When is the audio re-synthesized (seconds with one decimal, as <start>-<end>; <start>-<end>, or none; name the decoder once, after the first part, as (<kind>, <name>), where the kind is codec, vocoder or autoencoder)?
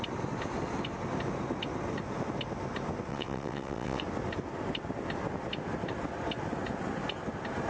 3.1-4.0 (vocoder, WaveNeXt)